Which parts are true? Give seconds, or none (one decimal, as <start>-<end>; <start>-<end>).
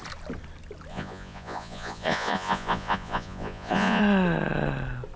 0.0-0.9; 4.0-5.2